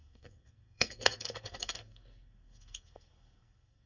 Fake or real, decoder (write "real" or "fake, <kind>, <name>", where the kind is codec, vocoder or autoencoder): fake, codec, SNAC